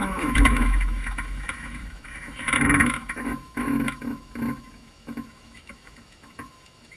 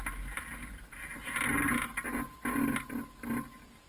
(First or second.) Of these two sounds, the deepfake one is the first